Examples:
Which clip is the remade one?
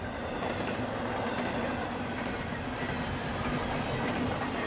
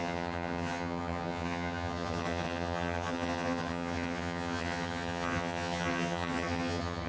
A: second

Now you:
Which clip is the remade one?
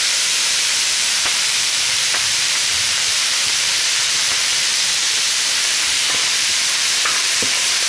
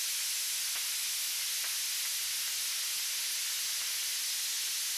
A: first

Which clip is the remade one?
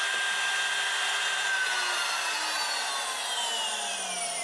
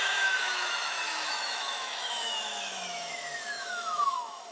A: second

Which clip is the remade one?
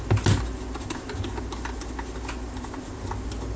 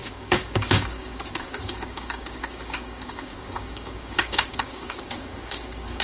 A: second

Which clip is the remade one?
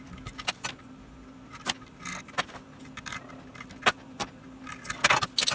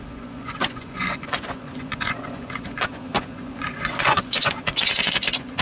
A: second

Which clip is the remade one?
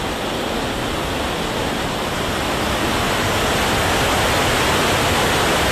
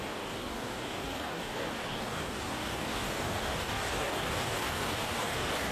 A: second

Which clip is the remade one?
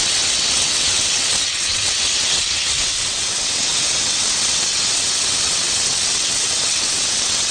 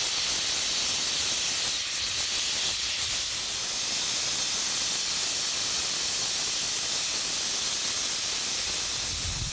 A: first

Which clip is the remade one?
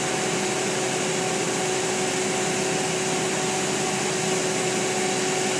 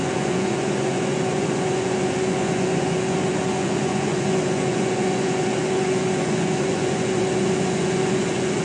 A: second